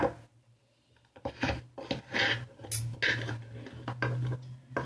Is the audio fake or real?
real